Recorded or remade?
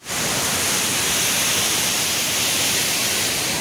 recorded